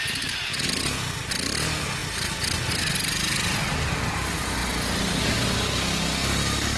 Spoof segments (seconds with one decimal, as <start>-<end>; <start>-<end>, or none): none